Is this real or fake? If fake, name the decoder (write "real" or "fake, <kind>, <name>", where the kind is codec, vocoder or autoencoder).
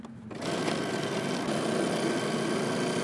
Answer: real